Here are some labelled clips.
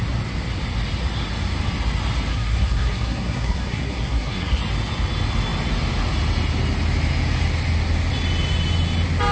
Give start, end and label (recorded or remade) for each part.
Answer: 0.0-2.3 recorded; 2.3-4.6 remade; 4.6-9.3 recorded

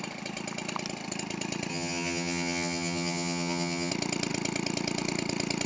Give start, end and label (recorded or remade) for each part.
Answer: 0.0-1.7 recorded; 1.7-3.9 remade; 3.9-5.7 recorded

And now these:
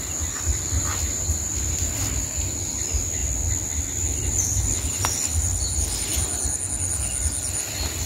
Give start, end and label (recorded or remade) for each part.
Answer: 0.0-8.1 recorded

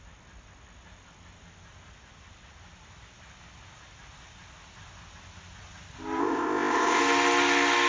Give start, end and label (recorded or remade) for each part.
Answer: 0.0-6.2 recorded; 6.2-7.0 remade; 7.0-7.9 recorded